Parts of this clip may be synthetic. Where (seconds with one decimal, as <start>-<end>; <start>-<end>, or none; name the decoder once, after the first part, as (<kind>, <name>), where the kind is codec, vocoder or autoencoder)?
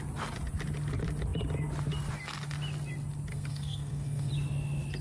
3.3-4.3 (codec, SNAC)